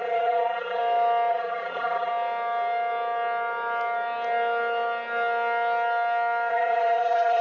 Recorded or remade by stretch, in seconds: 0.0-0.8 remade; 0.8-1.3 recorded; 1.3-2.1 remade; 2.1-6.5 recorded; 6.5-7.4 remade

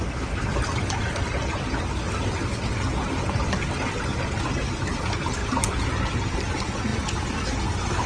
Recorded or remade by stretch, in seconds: 0.0-5.4 remade; 5.4-6.5 recorded; 6.5-6.9 remade; 6.9-8.1 recorded